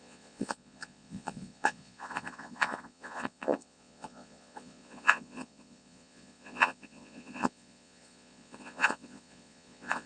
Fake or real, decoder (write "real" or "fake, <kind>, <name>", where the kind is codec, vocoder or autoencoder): fake, vocoder, Vocos